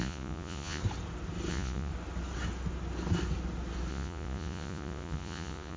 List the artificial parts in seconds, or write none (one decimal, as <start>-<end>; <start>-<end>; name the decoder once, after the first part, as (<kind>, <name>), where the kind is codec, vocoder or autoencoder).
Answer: 0.0-0.8 (vocoder, Vocos); 1.5-1.9; 3.9-5.8